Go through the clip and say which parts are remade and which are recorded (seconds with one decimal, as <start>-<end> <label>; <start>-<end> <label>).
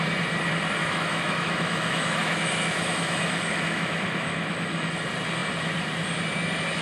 0.0-0.8 recorded; 0.8-4.9 remade; 4.9-6.8 recorded